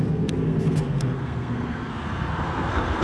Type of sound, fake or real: fake